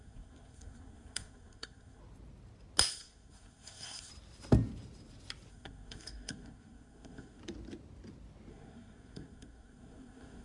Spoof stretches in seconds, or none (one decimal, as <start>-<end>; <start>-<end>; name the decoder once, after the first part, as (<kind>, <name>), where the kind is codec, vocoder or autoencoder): 0.0-2.0 (codec, SNAC); 2.9-4.1; 5.5-7.4; 8.5-10.4